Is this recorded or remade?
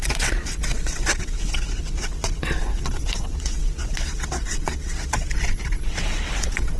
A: remade